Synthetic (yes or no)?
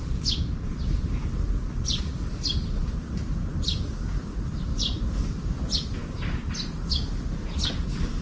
no